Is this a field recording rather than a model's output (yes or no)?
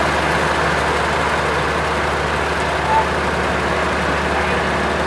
yes